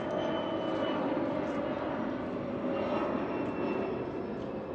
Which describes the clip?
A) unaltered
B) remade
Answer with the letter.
A